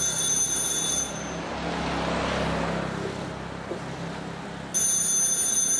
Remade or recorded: recorded